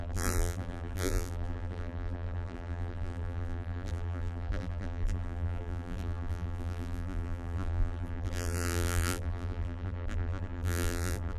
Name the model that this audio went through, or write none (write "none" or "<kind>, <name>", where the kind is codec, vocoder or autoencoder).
vocoder, BigVGAN v2